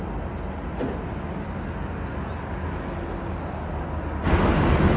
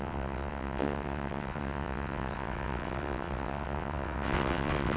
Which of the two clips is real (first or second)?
first